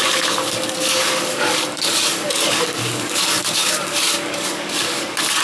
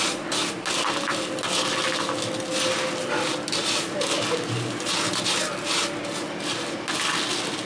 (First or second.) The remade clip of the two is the first